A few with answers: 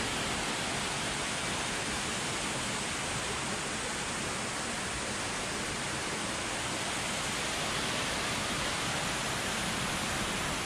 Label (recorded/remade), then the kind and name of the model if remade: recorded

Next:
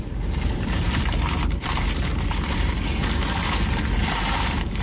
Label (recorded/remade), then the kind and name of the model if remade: remade, vocoder, BigVGAN v2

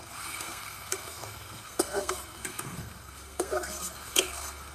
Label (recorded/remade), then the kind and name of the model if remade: remade, codec, SNAC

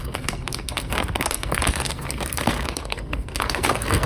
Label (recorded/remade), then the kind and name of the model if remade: remade, codec, SNAC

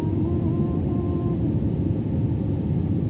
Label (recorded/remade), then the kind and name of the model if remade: recorded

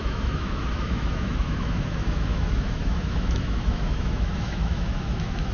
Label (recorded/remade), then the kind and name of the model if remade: remade, autoencoder, DAC-VAE